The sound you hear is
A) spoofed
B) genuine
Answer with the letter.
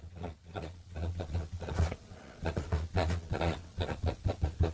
A